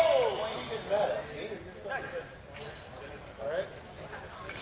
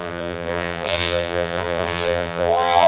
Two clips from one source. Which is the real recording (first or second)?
first